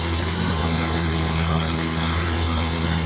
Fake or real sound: fake